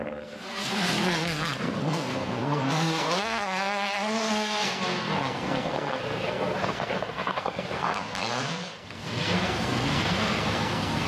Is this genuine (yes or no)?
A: no